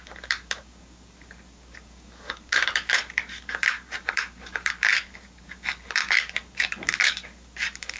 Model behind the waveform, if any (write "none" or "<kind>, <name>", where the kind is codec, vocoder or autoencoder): codec, DAC